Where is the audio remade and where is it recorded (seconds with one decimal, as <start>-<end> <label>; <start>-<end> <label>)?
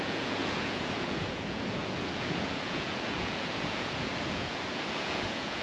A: 0.0-5.6 remade